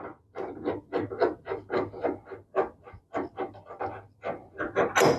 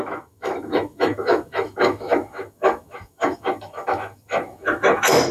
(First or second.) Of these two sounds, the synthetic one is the second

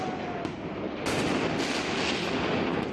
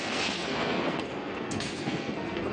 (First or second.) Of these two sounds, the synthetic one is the second